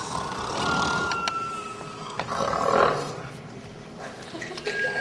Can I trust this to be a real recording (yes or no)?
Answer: yes